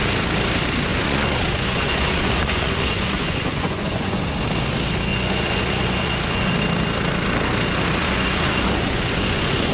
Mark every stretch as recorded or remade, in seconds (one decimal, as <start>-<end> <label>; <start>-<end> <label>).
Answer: 0.0-0.9 recorded; 0.9-4.2 remade; 4.2-5.1 recorded; 5.1-6.5 remade; 6.5-8.0 recorded; 8.0-9.7 remade